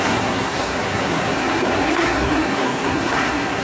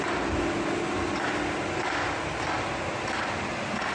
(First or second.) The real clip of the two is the second